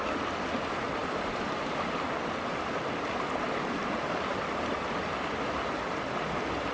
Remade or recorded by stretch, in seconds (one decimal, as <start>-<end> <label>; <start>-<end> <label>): 0.0-6.7 recorded